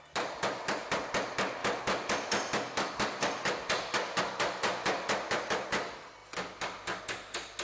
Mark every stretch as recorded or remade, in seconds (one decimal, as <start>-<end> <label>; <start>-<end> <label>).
0.0-7.6 recorded